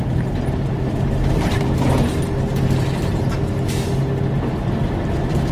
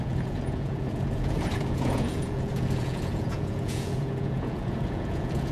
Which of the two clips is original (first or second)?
first